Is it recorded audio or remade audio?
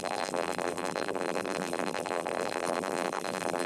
remade